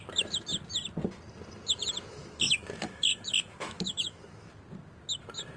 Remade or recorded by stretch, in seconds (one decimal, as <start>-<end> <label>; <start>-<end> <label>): 0.0-2.1 recorded; 2.1-4.5 remade; 4.5-5.6 recorded